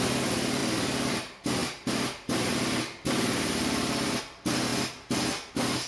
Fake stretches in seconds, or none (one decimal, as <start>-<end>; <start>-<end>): 1.6-4.2